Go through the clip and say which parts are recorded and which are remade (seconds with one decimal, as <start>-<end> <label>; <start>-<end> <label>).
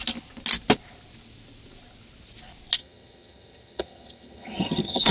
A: 0.0-2.8 recorded; 2.8-5.1 remade